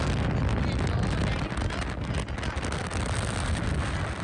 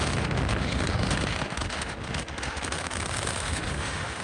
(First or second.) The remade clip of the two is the second